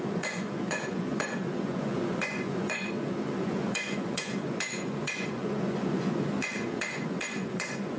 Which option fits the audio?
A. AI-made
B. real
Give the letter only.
A